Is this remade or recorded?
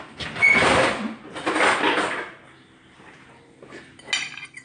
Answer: recorded